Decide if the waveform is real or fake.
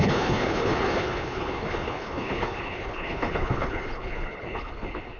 fake